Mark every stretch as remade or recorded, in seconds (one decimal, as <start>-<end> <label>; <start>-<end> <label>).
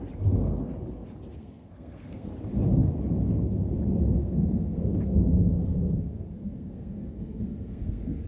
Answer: 0.0-1.4 recorded; 1.4-2.3 remade; 2.3-4.2 recorded; 4.2-8.3 remade